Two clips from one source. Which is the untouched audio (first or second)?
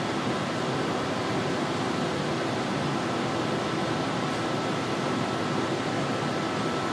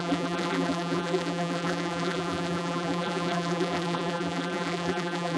first